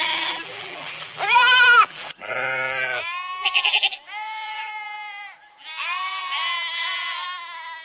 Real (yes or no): no